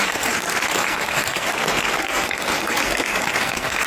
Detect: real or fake fake